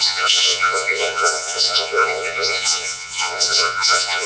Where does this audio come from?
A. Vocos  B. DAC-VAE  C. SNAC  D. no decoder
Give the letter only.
A